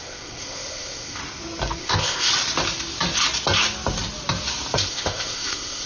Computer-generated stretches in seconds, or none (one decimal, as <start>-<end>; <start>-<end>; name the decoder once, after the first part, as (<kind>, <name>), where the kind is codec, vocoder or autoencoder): 0.0-1.2 (codec, ZipCodec); 1.8-2.3; 4.9-5.9

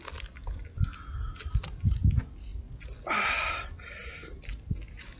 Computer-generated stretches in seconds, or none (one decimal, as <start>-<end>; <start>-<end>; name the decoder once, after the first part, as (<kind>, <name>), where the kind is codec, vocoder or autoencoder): none

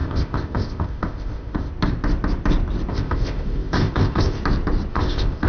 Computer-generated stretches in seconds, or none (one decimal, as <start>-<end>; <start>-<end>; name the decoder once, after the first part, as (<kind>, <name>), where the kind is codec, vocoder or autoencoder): 0.0-1.7 (codec, ZipCodec); 2.9-4.4; 4.9-5.5

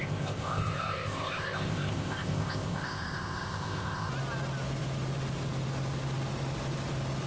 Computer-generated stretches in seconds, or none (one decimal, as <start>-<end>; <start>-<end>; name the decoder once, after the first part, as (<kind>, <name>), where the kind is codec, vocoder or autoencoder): 0.0-4.1 (codec, ZipCodec)

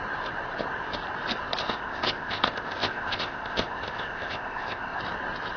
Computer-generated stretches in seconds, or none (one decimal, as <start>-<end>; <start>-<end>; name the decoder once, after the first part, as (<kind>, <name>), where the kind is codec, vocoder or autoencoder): 1.6-5.0 (codec, ZipCodec)

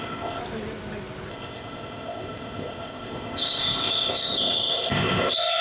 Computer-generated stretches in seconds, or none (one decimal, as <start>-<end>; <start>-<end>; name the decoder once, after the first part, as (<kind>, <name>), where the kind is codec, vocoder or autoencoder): 0.0-0.4 (codec, ZipCodec); 1.3-5.6

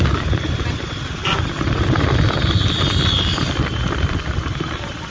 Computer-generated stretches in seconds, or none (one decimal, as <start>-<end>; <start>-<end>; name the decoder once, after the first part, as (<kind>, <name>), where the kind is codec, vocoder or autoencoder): none

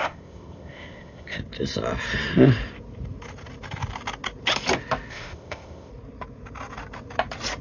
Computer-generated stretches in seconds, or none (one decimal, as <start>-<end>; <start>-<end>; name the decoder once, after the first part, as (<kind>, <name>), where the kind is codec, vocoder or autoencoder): 0.0-1.4 (codec, ZipCodec); 5.1-5.9